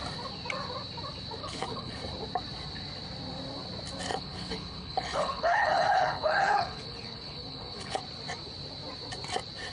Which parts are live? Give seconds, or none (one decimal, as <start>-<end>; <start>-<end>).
0.0-1.4; 2.0-4.1; 8.0-9.7